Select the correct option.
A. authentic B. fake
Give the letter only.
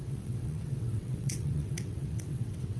B